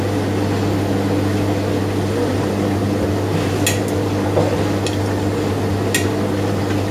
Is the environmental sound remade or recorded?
recorded